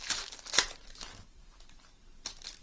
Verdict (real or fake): fake